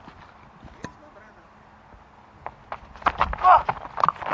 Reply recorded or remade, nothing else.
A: recorded